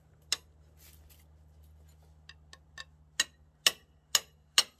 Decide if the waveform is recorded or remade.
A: recorded